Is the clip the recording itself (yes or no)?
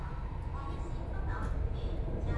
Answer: yes